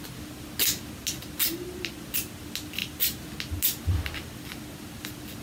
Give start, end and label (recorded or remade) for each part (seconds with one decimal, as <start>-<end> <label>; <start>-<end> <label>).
0.0-5.4 recorded

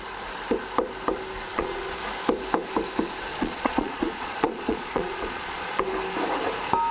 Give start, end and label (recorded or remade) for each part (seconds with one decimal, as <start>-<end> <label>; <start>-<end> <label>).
0.0-1.5 recorded; 1.5-2.0 remade; 2.0-3.3 recorded; 3.3-5.8 remade; 5.8-6.9 recorded

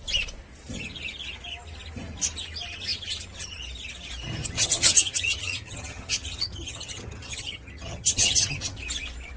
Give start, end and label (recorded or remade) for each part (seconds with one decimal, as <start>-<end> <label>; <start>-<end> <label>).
0.0-4.4 recorded; 4.4-8.6 remade; 8.6-9.4 recorded